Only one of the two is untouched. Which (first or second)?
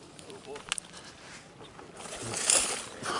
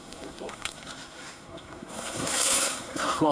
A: first